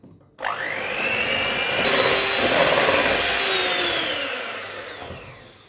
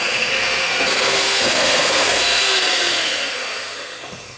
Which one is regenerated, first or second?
second